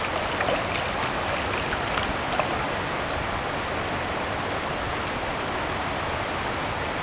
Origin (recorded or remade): recorded